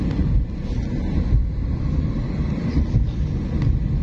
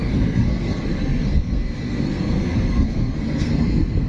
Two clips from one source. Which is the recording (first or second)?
first